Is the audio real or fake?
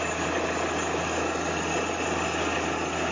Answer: real